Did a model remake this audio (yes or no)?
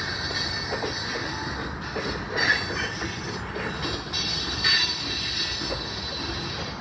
no